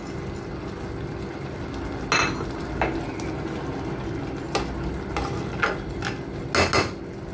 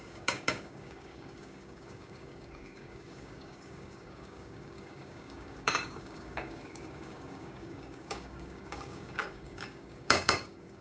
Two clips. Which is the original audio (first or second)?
first